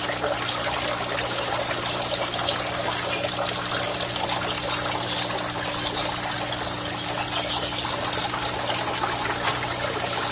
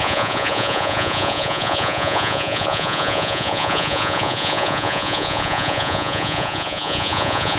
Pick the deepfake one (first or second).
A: second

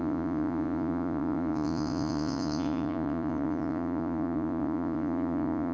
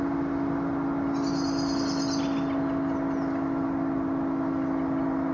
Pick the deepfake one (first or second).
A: first